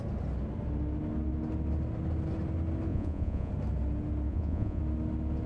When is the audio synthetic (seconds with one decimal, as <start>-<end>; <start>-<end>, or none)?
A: 2.9-3.5; 4.3-4.8